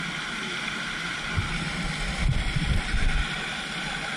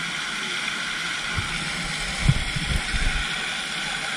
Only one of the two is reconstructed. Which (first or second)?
first